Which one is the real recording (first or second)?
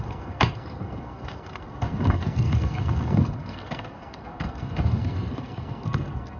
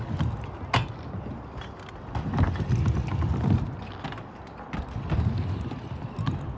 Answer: second